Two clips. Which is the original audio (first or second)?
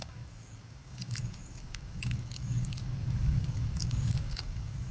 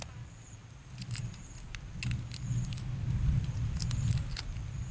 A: second